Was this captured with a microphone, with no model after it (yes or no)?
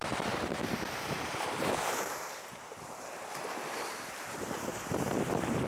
no